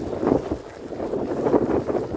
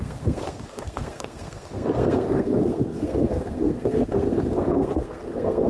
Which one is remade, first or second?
second